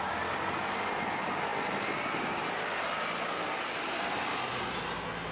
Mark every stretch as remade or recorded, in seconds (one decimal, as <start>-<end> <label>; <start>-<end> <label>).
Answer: 0.0-5.3 recorded